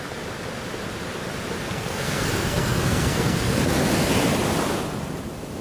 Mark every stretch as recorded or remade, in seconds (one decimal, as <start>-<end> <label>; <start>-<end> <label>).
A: 0.0-1.6 recorded; 1.6-3.6 remade; 3.6-5.6 recorded